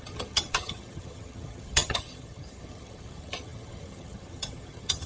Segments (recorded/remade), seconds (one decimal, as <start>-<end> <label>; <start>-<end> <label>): 0.0-5.1 remade